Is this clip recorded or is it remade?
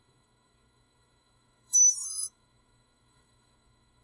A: remade